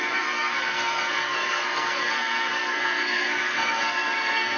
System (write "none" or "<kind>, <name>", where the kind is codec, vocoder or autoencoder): codec, SNAC